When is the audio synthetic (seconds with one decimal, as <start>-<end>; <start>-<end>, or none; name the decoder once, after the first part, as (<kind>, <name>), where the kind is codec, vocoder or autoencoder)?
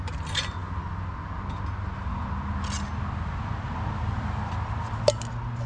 none